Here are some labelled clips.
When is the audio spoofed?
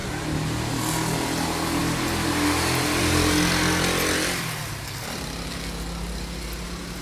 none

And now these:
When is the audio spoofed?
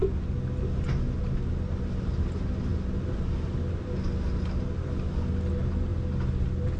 none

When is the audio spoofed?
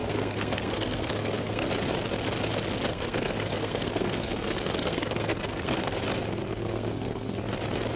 0.0-1.7 (codec, SNAC); 2.9-6.0; 6.4-7.4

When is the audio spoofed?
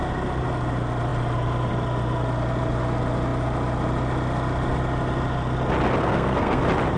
6.0-6.6 (codec, SNAC)